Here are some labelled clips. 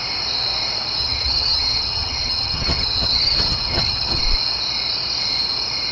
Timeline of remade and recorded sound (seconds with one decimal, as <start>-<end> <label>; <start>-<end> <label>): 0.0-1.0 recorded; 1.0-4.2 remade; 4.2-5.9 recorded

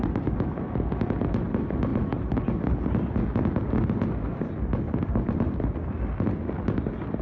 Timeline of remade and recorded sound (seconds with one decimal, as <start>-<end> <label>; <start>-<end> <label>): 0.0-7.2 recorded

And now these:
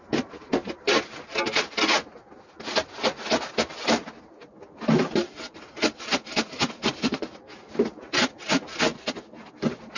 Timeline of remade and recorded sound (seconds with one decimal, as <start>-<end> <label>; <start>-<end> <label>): 0.0-10.0 recorded